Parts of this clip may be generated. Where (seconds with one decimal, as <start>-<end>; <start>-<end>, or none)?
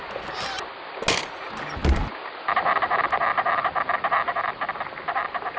none